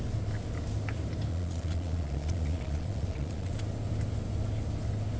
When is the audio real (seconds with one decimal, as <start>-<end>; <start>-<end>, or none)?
0.0-1.3; 3.5-5.2